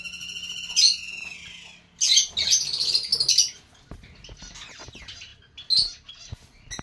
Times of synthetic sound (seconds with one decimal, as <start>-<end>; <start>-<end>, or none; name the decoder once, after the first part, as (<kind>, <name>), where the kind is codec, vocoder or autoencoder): none